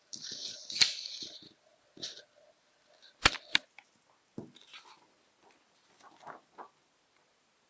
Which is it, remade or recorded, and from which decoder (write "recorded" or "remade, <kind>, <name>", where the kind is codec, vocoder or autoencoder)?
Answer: recorded